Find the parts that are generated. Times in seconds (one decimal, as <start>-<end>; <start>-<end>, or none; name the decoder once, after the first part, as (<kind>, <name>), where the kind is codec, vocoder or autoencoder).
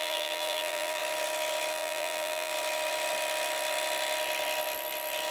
0.0-1.0 (vocoder, BigVGAN v2); 1.7-2.5